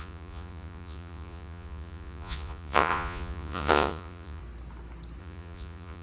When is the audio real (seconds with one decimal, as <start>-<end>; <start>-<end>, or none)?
4.4-5.2